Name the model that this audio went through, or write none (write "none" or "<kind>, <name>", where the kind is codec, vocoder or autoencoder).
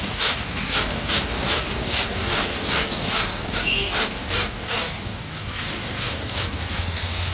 codec, DAC